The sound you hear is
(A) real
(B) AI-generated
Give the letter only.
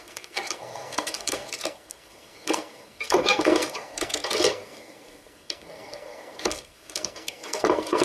B